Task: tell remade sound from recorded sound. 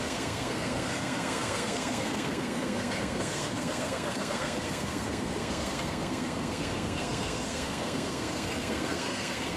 remade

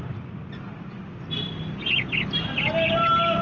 recorded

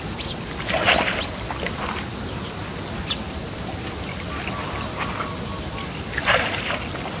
recorded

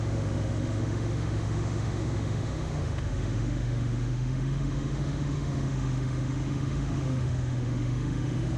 remade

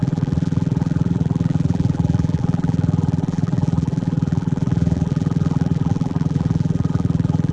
remade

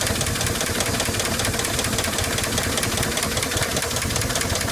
recorded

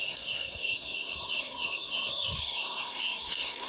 remade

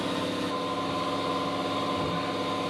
recorded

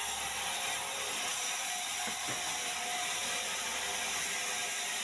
recorded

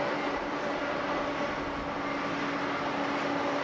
recorded